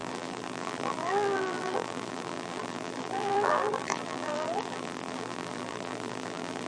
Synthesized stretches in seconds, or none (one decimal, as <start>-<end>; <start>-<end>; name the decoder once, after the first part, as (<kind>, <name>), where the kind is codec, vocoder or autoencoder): 0.0-6.7 (vocoder, BigVGAN v2)